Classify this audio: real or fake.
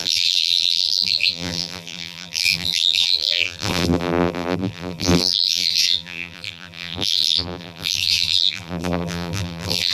fake